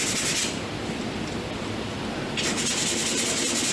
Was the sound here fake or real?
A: real